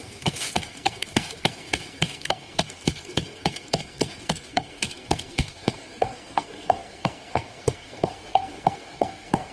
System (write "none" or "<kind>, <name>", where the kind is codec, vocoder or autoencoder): codec, SNAC